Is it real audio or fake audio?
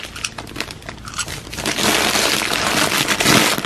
real